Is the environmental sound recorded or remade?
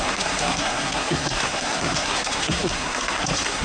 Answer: remade